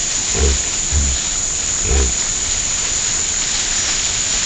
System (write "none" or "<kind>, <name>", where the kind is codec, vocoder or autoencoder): none